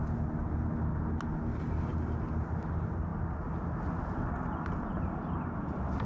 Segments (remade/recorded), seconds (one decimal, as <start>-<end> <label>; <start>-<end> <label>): 0.0-6.1 recorded